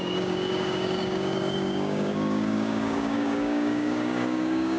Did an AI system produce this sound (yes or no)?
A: yes